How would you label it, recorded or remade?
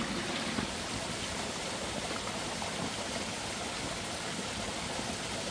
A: recorded